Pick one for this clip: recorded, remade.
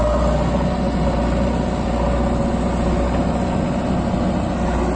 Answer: recorded